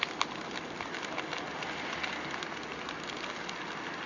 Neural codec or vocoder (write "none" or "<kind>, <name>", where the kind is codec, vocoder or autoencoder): none